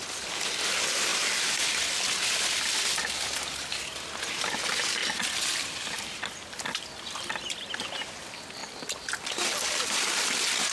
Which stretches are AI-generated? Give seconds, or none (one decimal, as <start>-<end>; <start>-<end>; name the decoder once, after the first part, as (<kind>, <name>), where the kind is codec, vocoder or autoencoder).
none